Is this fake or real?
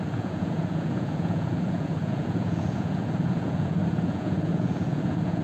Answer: fake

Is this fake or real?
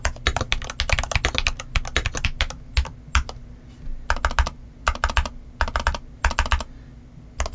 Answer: real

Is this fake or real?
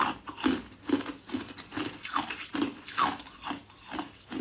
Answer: real